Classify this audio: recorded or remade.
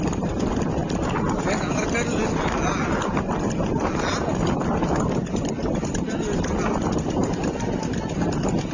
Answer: recorded